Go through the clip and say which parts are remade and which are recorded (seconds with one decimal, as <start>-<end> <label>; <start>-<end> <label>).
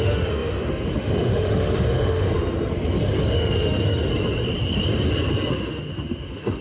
0.0-2.3 remade; 2.3-3.3 recorded; 3.3-4.1 remade; 4.1-5.5 recorded; 5.5-6.6 remade